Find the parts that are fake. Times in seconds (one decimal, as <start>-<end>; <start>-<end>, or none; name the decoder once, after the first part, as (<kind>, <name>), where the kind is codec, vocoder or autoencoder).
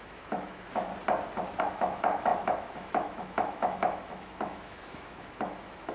0.0-0.9 (autoencoder, DAC-VAE); 1.6-5.9